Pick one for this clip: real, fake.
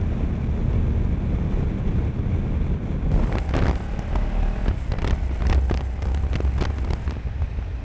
real